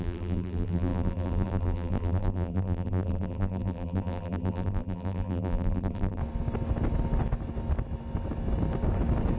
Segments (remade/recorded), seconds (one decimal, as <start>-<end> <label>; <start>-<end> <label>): 0.0-6.2 remade; 6.2-9.4 recorded